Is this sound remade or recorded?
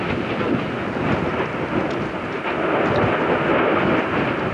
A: recorded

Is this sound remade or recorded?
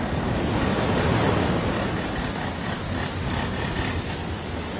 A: recorded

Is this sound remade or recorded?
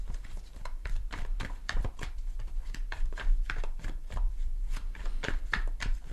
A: remade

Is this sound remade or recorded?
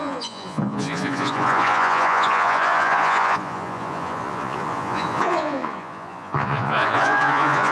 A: remade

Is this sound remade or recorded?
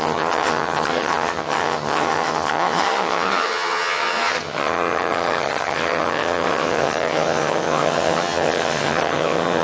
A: remade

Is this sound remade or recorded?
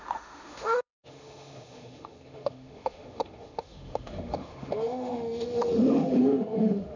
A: remade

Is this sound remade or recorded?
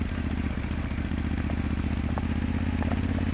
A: recorded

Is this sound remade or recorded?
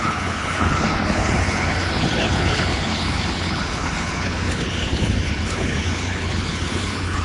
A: remade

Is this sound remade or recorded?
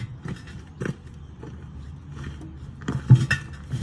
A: recorded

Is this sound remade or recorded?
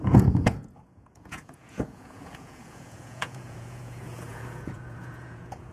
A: remade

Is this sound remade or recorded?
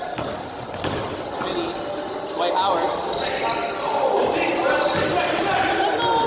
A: recorded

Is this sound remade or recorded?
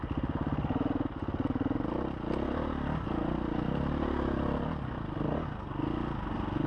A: recorded